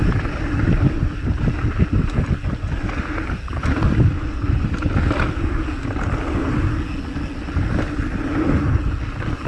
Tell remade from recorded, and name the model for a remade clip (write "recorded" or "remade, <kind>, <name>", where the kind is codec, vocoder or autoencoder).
recorded